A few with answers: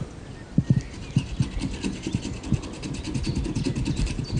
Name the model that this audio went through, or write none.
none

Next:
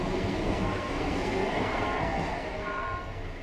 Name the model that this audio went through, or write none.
codec, SNAC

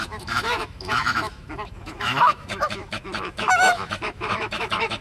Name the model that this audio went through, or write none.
autoencoder, DAC-VAE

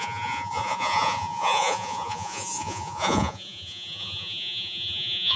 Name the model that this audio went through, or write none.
vocoder, Vocos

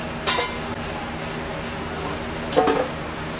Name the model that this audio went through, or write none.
none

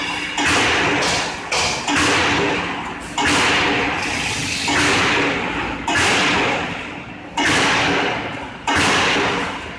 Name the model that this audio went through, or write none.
none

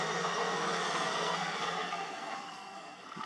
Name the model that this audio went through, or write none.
codec, SNAC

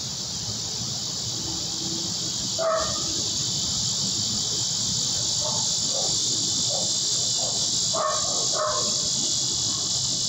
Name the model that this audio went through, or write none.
none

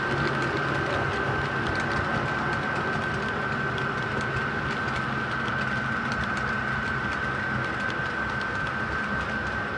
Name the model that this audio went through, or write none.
none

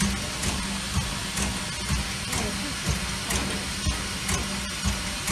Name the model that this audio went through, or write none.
none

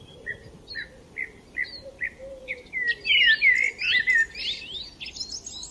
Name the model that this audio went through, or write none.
none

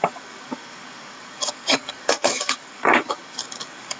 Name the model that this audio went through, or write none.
codec, DAC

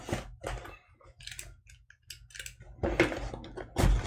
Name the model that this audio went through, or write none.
none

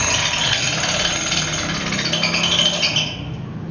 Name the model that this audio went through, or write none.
none